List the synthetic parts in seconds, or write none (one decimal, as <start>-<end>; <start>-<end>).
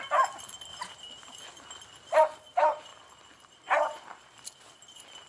0.0-0.7; 2.2-5.3